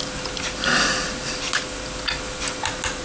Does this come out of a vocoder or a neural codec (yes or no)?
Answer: no